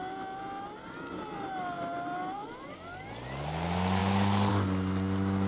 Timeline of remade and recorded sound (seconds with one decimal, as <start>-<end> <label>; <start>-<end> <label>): 0.0-5.5 recorded